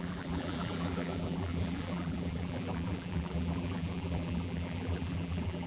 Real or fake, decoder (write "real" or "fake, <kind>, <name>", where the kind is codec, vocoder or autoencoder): fake, vocoder, BigVGAN v2